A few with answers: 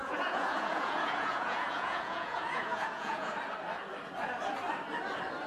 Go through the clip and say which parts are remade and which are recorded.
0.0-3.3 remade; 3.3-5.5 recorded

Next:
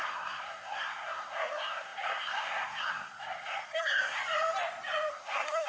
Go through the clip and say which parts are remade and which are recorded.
0.0-4.2 remade; 4.2-5.1 recorded; 5.1-5.7 remade

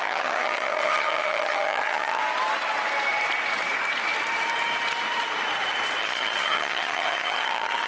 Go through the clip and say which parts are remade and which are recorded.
0.0-2.2 remade; 2.2-6.0 recorded; 6.0-7.9 remade

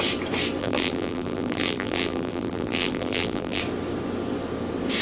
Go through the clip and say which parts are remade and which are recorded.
0.0-0.6 recorded; 0.6-3.6 remade; 3.6-5.0 recorded

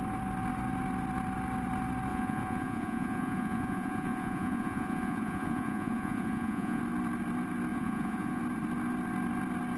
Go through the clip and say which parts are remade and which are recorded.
0.0-2.1 recorded; 2.1-6.8 remade; 6.8-7.7 recorded; 7.7-8.4 remade; 8.4-9.8 recorded

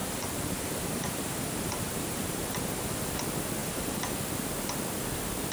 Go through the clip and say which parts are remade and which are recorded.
0.0-3.1 remade; 3.1-3.6 recorded; 3.6-4.1 remade; 4.1-5.5 recorded